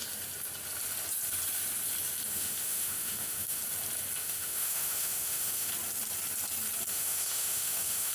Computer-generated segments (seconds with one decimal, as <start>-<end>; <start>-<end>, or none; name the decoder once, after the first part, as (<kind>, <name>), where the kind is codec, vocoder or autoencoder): 2.3-3.6 (autoencoder, DAC-VAE); 4.2-5.7; 6.9-8.1